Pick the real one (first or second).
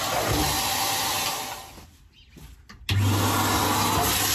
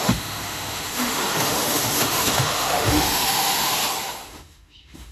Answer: first